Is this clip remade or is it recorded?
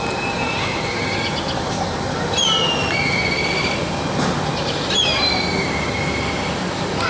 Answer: recorded